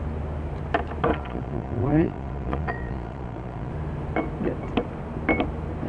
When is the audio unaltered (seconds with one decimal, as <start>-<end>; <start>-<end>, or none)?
0.0-1.1; 3.7-5.9